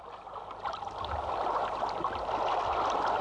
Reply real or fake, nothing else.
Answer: real